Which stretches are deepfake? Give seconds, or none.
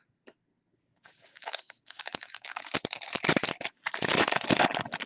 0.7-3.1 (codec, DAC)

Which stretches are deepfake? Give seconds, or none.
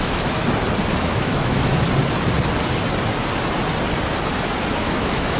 0.0-0.4 (autoencoder, DAC-VAE); 1.0-1.7; 4.8-5.4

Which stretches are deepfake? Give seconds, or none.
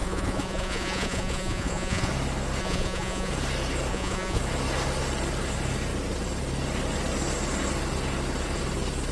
0.0-2.1 (vocoder, Vocos); 2.6-3.3; 3.9-4.4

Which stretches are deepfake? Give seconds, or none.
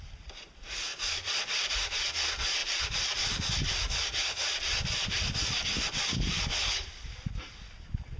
0.9-1.7 (vocoder, BigVGAN v2); 2.6-7.3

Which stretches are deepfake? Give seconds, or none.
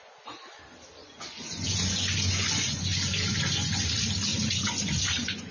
1.0-3.8 (vocoder, Vocos); 4.3-5.5